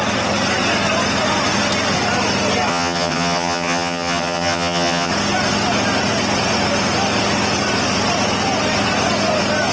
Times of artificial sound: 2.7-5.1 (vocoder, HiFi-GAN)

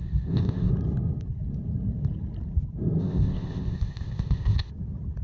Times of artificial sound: 0.0-0.7 (codec, ZipCodec); 3.0-4.7

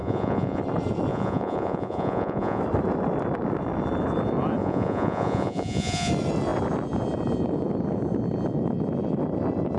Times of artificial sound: 0.0-0.6 (vocoder, Vocos); 1.1-2.6; 4.6-6.1

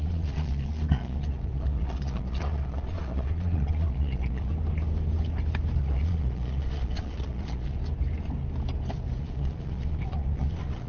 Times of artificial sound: 0.0-4.5 (vocoder, Vocos); 5.8-7.8; 9.2-10.9

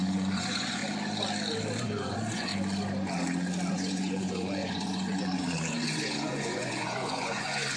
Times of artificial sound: 0.0-0.8 (vocoder, Vocos); 1.8-2.5; 3.7-7.8

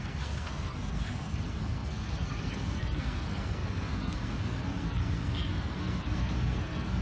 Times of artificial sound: 0.0-7.0 (codec, SNAC)

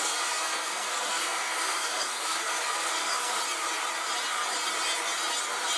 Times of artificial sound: 0.0-3.4 (codec, SNAC)